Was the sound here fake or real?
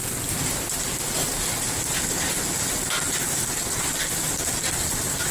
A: real